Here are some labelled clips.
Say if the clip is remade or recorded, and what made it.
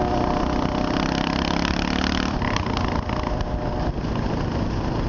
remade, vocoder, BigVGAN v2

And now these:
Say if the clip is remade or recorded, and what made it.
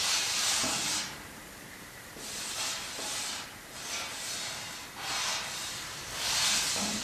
remade, vocoder, BigVGAN v2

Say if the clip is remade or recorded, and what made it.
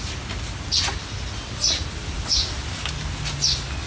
recorded